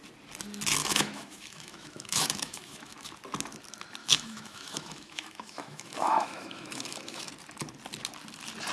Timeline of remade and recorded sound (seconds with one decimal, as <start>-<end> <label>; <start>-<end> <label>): 0.0-0.8 recorded; 0.8-3.1 remade; 3.1-4.0 recorded; 4.0-7.3 remade; 7.3-8.7 recorded